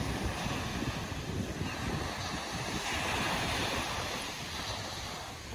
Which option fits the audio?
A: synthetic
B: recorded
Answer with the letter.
B